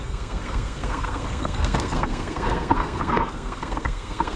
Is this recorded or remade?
remade